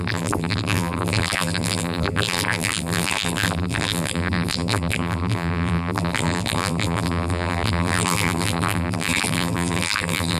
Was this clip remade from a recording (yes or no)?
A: yes